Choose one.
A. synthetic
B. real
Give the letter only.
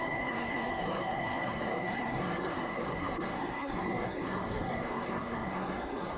A